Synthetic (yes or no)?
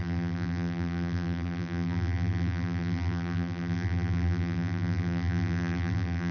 yes